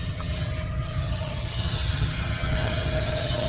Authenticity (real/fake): fake